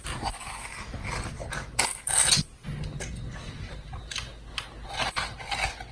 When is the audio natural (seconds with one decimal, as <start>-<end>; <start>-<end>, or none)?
0.0-5.9